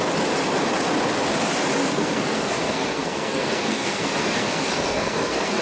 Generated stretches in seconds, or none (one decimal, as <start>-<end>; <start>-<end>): 1.8-5.6